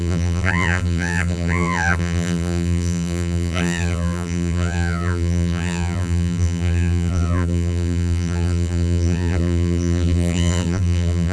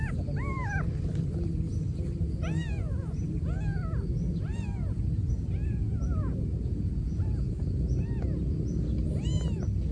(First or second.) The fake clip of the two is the first